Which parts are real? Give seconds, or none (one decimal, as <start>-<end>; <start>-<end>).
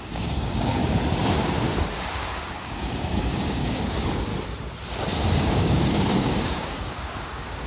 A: 0.8-1.8; 4.3-5.4